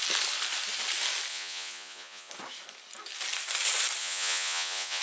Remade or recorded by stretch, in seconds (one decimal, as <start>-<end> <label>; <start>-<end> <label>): 0.0-1.3 recorded; 1.3-2.3 remade; 2.3-4.0 recorded; 4.0-5.0 remade